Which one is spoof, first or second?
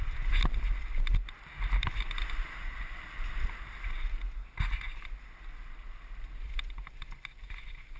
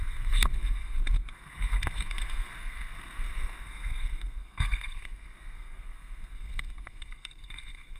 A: second